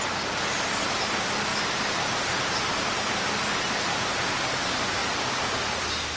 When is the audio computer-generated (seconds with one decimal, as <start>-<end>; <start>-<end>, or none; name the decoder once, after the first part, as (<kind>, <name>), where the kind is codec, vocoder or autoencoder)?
5.0-6.2 (vocoder, BigVGAN v2)